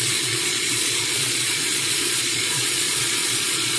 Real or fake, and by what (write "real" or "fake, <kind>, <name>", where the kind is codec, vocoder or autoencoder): fake, vocoder, Vocos